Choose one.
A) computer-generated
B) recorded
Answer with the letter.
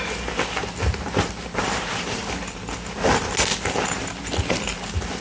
B